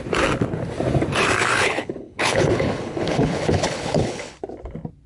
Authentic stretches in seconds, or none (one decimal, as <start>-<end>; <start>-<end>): 0.0-1.6; 4.4-5.1